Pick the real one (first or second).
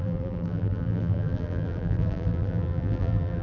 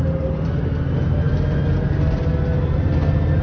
second